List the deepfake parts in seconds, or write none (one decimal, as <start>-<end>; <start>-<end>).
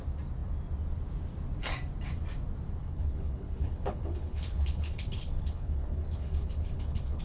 2.8-7.2